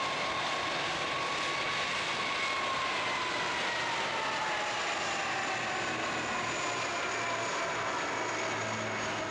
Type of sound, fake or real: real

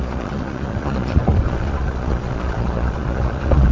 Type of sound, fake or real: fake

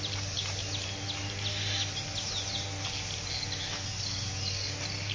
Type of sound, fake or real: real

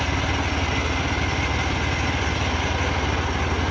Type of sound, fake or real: real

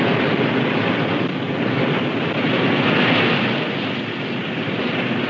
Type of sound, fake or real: real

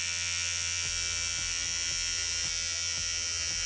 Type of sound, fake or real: real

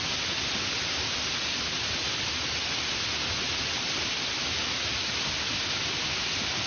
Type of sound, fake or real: real